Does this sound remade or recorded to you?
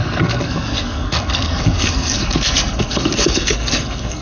remade